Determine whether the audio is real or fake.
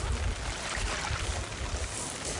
real